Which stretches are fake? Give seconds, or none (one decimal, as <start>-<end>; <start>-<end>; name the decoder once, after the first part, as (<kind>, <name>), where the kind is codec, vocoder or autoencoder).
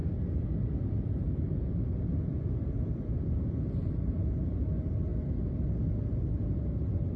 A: none